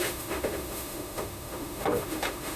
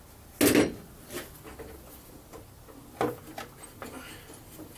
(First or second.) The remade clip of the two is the first